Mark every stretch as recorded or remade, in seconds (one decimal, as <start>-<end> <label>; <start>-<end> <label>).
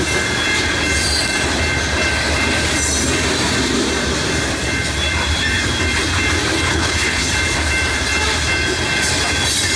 0.0-6.7 recorded; 6.7-7.3 remade; 7.3-9.8 recorded